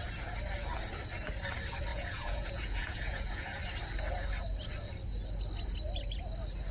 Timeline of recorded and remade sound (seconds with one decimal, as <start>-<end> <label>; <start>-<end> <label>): 0.0-1.9 recorded; 1.9-3.6 remade; 3.6-6.7 recorded